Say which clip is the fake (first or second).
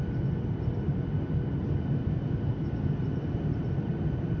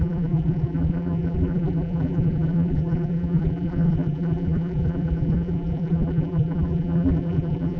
second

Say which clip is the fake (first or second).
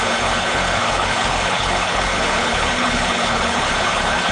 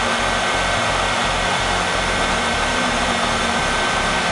first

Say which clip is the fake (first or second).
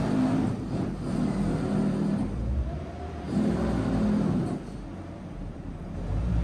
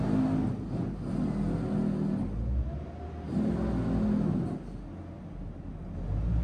first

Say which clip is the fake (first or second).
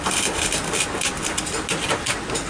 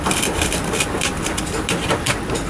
second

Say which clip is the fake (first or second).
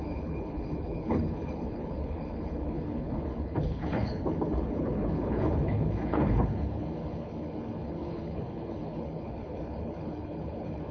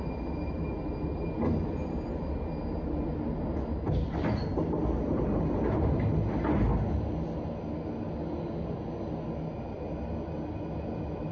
first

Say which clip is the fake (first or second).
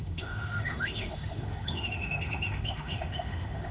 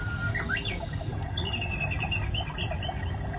first